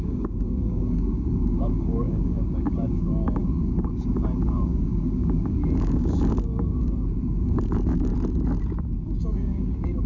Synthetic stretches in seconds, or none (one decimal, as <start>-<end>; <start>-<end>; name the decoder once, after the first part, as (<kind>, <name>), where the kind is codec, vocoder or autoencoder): 0.0-8.1 (codec, DAC); 8.9-10.1